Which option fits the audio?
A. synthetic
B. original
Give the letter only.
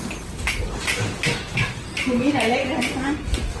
B